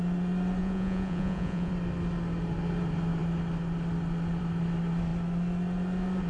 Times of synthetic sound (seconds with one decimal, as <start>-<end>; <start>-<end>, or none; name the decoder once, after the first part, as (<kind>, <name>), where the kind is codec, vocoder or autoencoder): 0.6-1.7 (vocoder, Vocos)

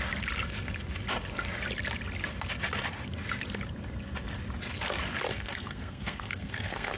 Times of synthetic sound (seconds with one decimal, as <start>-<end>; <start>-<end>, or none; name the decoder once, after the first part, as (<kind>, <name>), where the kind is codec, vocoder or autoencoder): 5.3-7.0 (codec, SNAC)

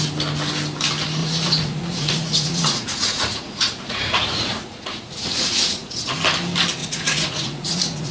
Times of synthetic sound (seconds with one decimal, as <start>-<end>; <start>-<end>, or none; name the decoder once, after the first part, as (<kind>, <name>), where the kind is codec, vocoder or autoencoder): 1.2-6.1 (vocoder, Vocos); 6.8-8.1

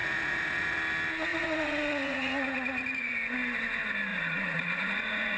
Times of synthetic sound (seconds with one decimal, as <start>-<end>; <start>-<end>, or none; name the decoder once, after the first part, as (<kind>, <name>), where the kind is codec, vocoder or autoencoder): 0.0-0.8 (vocoder, Vocos); 1.3-3.1; 4.1-5.4

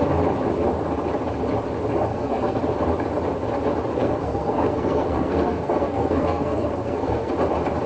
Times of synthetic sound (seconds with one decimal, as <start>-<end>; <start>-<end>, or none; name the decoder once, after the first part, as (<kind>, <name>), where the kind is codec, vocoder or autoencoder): 2.1-2.6 (codec, SNAC); 4.0-7.3